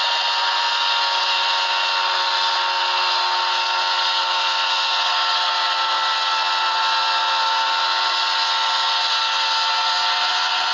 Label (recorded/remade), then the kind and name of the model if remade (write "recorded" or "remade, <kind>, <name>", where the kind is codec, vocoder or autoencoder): recorded